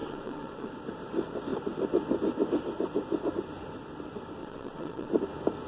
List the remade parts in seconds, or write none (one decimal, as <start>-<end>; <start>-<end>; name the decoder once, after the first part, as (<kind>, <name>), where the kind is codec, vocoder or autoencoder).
0.0-0.7 (vocoder, WaveNeXt); 4.4-5.1